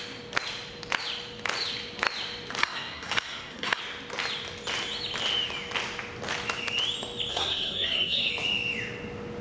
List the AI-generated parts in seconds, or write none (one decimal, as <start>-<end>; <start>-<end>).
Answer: 2.6-3.8; 7.3-8.3